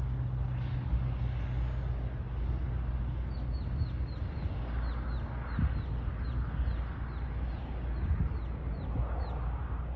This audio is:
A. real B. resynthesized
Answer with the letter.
A